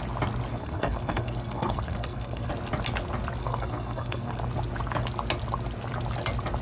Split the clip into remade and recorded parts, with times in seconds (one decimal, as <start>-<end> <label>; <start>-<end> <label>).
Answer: 0.0-0.5 recorded; 0.5-2.5 remade; 2.5-3.4 recorded; 3.4-4.4 remade; 4.4-6.6 recorded